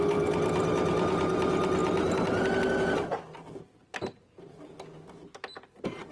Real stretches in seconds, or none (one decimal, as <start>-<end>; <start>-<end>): 0.0-6.1